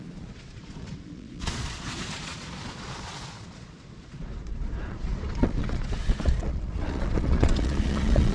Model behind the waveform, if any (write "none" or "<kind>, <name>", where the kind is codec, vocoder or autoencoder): vocoder, Vocos